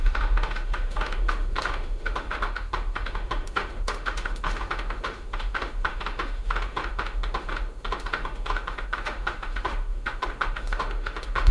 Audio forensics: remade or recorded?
remade